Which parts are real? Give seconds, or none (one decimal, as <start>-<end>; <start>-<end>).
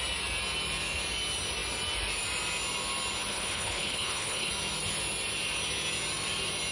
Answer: 0.0-3.3; 4.5-6.7